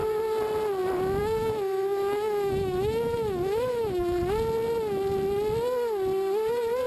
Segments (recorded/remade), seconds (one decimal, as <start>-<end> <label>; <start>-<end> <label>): 0.0-1.2 recorded; 1.2-4.2 remade; 4.2-6.9 recorded